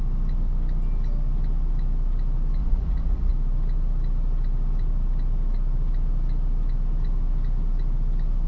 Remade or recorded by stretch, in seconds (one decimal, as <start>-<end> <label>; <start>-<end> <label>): 0.0-2.6 recorded; 2.6-3.3 remade; 3.3-8.5 recorded

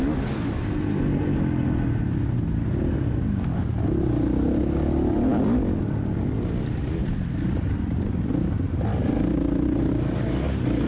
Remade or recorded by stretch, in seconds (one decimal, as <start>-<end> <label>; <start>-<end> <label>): 0.0-10.9 recorded

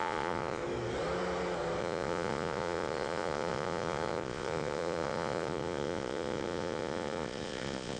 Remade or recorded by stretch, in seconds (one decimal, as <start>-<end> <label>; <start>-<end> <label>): 0.0-0.6 remade; 0.6-1.8 recorded; 1.8-8.0 remade

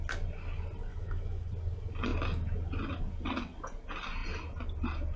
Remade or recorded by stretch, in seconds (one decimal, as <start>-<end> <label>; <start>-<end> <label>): 0.0-0.9 recorded; 0.9-1.5 remade; 1.5-5.2 recorded

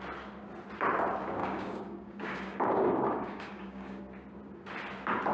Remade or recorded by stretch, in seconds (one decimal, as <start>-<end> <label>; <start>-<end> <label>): 0.0-1.4 recorded; 1.4-4.0 remade; 4.0-5.3 recorded

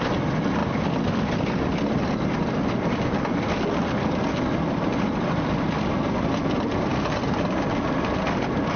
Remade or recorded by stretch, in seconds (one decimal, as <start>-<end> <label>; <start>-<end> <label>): 0.0-8.8 recorded